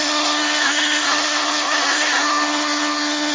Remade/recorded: remade